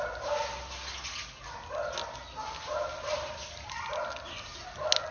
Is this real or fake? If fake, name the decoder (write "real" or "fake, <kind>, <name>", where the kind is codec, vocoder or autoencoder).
real